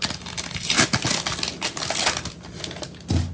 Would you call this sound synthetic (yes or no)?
no